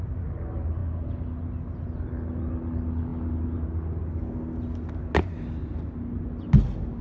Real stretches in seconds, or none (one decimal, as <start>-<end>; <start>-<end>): 0.0-7.0